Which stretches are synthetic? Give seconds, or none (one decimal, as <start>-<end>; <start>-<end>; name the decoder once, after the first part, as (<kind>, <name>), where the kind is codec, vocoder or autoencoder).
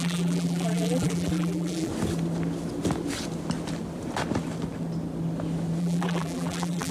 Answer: 0.0-1.9 (vocoder, BigVGAN v2); 5.8-6.9